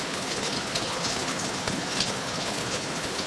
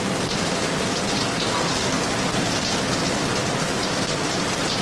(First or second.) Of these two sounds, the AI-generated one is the first